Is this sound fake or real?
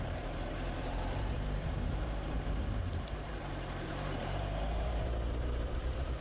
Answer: fake